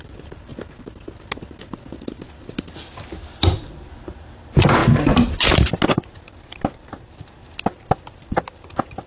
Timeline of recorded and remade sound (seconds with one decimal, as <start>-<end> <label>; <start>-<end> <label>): 0.0-9.1 recorded